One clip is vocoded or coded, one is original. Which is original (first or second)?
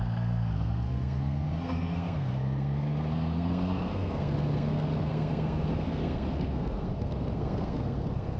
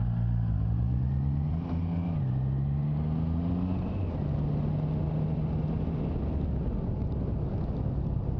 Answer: second